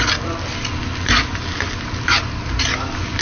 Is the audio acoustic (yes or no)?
yes